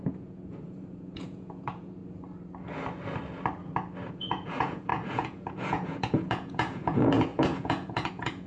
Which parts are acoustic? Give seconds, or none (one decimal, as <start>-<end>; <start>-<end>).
2.0-4.1